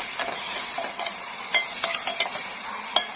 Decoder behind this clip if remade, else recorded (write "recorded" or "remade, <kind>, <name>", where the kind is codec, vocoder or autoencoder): recorded